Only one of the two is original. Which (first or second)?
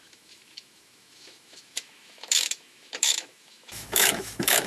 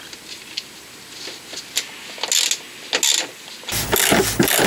second